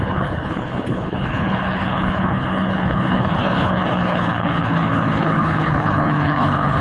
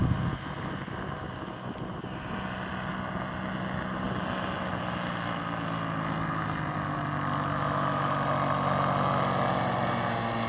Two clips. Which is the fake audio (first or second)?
first